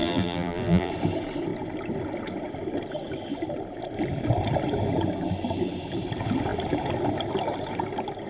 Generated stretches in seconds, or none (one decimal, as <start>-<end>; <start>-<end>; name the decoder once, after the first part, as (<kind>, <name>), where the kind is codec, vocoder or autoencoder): 0.0-0.9 (vocoder, BigVGAN v2)